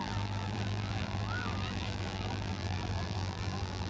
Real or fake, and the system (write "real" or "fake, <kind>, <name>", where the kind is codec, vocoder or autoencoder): fake, vocoder, BigVGAN v2